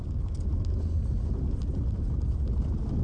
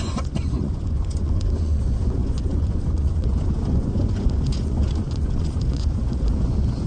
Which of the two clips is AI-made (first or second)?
second